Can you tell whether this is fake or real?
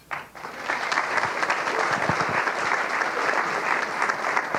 real